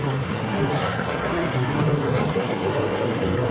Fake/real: fake